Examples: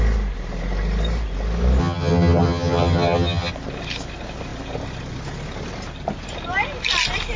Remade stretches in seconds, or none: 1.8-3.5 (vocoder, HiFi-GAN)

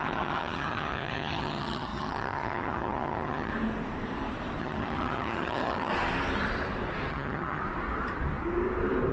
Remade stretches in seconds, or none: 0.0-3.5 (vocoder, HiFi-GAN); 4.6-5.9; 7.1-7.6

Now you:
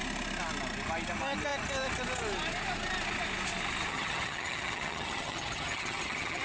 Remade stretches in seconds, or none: 3.9-6.4 (vocoder, HiFi-GAN)

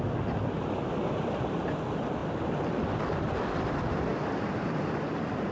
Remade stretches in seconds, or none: none